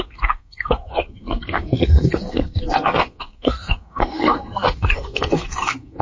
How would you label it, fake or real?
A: fake